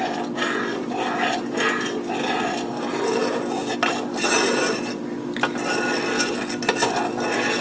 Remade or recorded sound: recorded